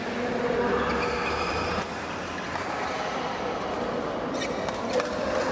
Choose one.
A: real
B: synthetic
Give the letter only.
A